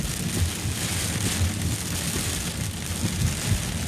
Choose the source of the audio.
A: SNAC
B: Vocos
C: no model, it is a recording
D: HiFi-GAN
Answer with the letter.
C